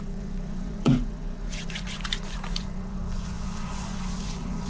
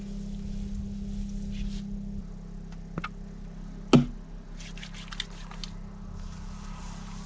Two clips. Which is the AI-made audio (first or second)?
first